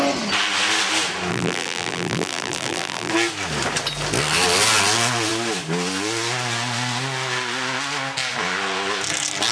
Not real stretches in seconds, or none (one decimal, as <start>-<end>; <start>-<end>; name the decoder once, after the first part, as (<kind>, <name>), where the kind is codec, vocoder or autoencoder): 1.3-3.1 (vocoder, BigVGAN v2)